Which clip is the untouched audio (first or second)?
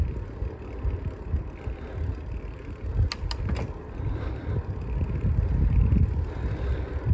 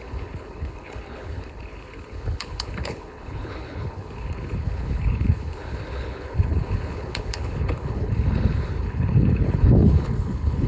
first